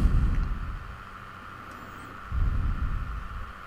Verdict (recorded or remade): recorded